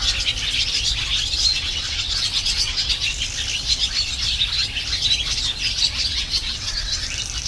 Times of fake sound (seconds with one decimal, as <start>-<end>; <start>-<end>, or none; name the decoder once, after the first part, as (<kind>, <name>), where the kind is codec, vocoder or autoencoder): 1.5-2.9 (vocoder, WaveNeXt); 6.1-7.0

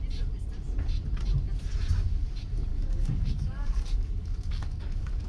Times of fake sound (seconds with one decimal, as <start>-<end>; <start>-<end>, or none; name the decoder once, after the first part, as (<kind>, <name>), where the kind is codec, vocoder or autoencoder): 2.7-5.3 (codec, DAC)